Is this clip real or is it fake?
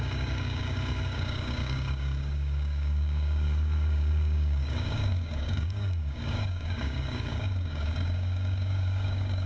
fake